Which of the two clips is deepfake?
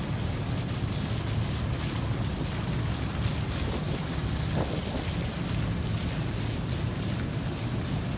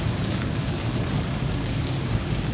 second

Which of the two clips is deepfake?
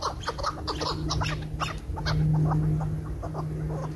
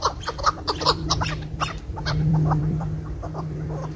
second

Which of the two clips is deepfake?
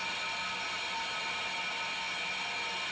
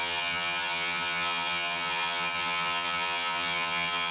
second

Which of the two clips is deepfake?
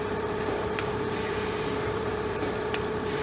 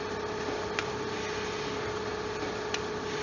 first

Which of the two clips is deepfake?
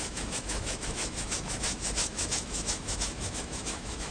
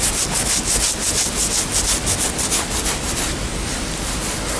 first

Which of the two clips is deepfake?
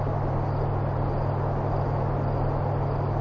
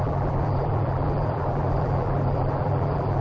second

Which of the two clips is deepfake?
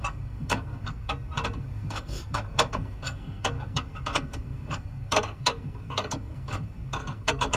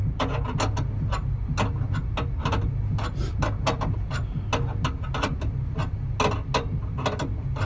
first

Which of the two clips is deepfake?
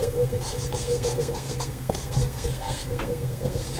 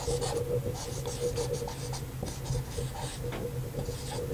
first